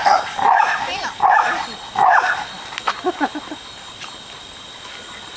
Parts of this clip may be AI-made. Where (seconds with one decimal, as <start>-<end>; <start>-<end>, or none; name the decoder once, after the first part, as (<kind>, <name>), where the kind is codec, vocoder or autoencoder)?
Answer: none